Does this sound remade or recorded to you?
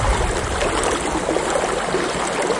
recorded